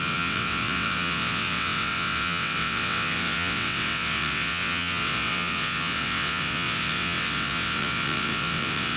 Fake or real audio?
fake